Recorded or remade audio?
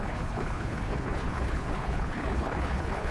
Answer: remade